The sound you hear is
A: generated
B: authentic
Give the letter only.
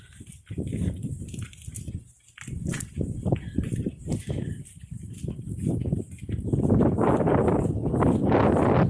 B